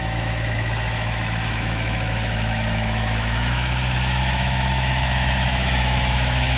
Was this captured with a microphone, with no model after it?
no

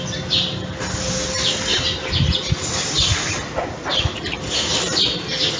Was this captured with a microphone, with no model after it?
yes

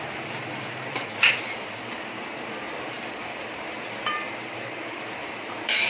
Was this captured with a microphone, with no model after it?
no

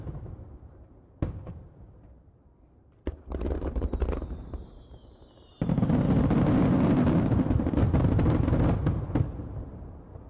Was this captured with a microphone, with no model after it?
no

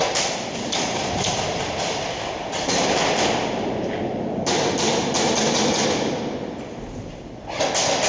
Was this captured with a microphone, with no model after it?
yes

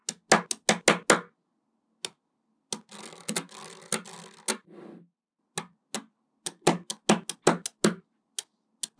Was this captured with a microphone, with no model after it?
yes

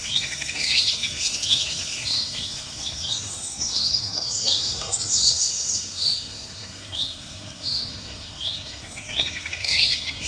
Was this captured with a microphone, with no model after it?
no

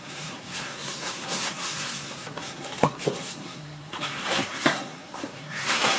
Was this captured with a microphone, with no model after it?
no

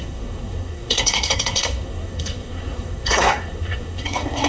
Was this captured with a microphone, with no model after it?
no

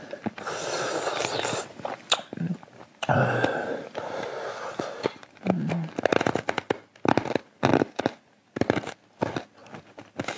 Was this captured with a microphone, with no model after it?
yes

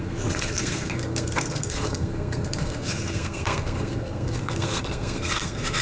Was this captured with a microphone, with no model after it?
no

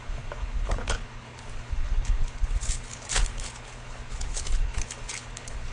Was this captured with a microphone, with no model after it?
no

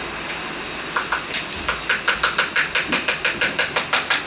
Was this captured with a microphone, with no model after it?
yes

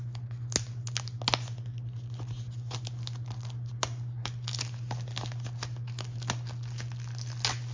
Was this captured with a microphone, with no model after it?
yes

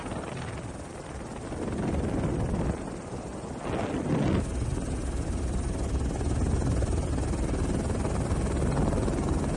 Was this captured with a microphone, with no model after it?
yes